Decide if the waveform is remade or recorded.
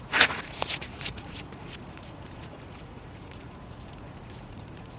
remade